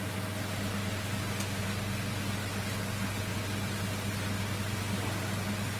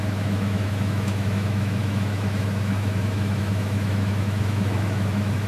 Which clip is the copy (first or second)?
second